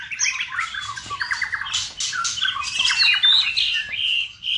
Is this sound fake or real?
real